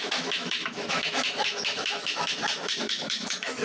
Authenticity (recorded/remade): remade